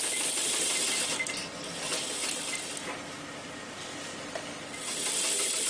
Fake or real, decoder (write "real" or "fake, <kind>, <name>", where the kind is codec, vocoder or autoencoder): real